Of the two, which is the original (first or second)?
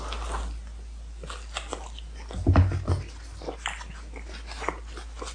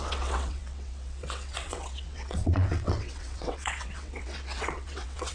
first